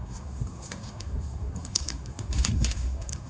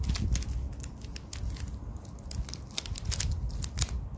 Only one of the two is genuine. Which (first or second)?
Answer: second